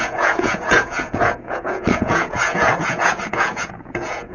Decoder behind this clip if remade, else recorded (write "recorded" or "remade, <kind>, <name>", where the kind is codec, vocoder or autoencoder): remade, vocoder, Vocos